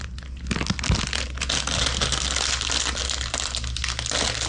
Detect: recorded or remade recorded